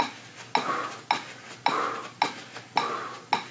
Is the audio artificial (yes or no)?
no